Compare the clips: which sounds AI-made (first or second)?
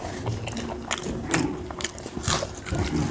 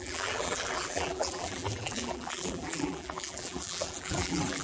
second